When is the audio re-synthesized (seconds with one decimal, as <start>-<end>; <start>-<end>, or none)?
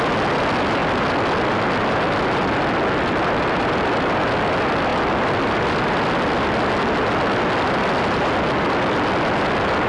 none